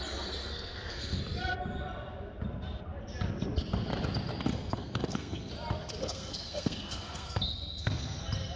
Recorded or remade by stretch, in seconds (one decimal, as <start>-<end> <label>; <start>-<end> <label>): 0.0-0.4 recorded; 0.4-1.2 remade; 1.2-4.5 recorded; 4.5-5.5 remade; 5.5-6.0 recorded; 6.0-8.2 remade; 8.2-8.6 recorded